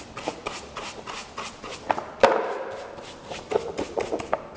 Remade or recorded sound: remade